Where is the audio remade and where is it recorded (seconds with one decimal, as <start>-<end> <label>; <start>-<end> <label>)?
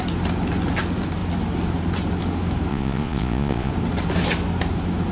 0.0-2.7 recorded; 2.7-3.7 remade; 3.7-5.1 recorded